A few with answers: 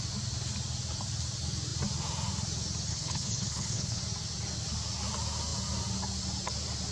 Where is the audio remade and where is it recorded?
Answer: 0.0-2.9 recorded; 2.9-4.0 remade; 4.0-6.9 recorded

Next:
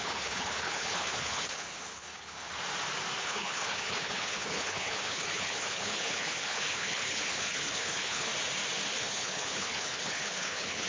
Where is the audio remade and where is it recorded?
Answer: 0.0-2.5 remade; 2.5-3.2 recorded; 3.2-8.3 remade; 8.3-8.9 recorded; 8.9-10.9 remade

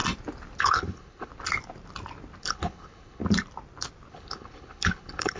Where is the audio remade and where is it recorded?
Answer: 0.0-0.6 recorded; 0.6-1.3 remade; 1.3-2.4 recorded; 2.4-3.2 remade; 3.2-4.1 recorded; 4.1-5.4 remade